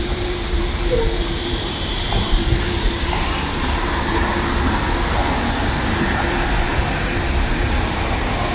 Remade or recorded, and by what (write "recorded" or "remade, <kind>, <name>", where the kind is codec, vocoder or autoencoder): remade, vocoder, BigVGAN v2